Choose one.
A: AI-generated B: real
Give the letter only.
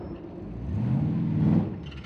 B